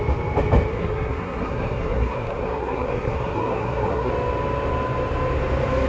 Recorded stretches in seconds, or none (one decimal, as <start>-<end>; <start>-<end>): 0.0-0.7; 4.1-5.9